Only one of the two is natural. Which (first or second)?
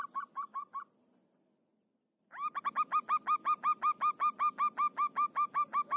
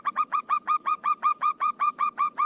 first